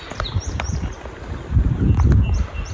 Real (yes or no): yes